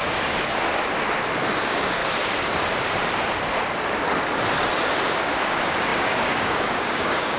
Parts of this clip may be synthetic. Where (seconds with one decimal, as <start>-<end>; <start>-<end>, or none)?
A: 1.5-2.0; 5.1-7.4